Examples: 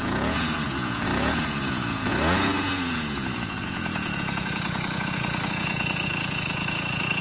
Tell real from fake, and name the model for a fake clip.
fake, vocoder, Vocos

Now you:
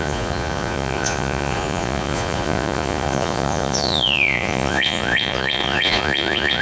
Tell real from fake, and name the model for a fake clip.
fake, vocoder, Vocos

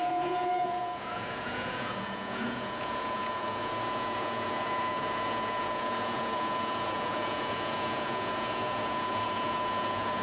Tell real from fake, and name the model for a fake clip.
fake, vocoder, Vocos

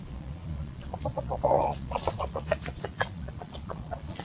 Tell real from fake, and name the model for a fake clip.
fake, vocoder, Vocos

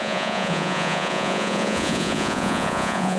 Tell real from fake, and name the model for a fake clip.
fake, vocoder, Vocos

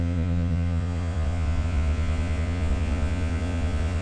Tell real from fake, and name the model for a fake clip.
fake, vocoder, Vocos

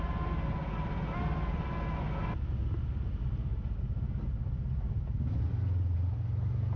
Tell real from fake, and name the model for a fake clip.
real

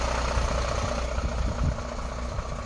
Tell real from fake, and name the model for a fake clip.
real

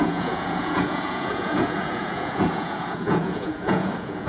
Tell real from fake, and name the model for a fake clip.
fake, vocoder, Vocos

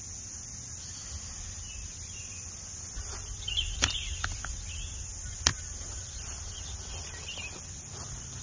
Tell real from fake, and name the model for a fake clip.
real